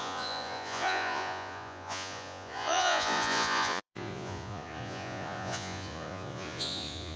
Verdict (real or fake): fake